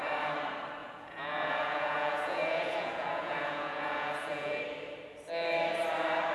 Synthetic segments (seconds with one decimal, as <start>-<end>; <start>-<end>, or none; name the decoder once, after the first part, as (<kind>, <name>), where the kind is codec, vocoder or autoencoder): 0.8-4.6 (vocoder, Vocos)